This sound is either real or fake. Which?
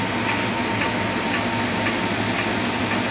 real